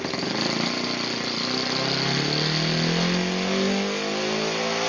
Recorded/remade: recorded